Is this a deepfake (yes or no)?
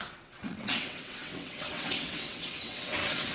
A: yes